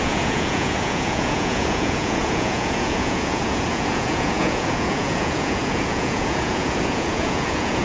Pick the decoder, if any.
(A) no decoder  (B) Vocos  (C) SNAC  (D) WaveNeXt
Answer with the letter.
B